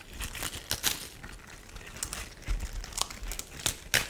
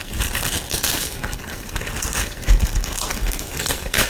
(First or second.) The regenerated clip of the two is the second